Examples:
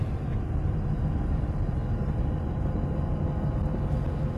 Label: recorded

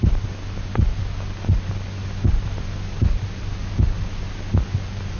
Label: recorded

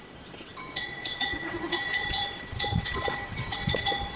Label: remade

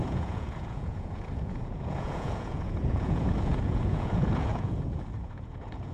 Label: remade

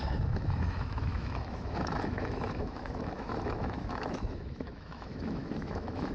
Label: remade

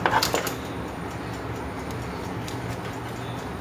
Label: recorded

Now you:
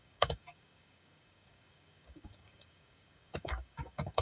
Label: remade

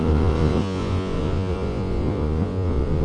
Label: remade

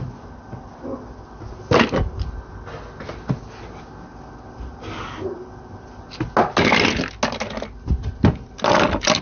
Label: recorded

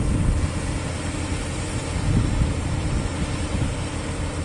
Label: recorded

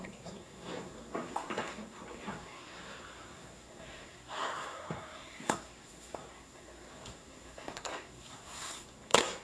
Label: remade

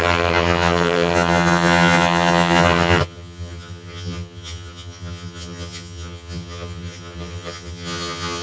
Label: remade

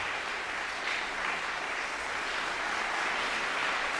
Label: recorded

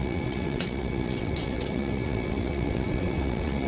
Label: remade